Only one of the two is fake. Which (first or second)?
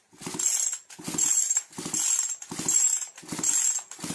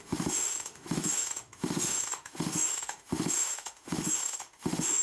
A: second